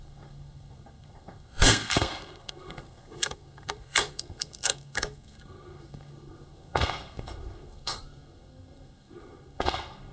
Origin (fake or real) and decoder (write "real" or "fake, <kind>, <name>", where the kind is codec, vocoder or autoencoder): fake, codec, SNAC